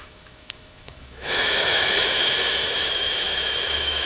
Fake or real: fake